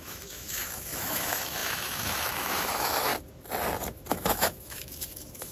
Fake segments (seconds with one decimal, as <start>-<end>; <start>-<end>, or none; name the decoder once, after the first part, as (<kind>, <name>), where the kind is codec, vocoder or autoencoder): 0.0-3.1 (autoencoder, DAC-VAE); 4.1-5.5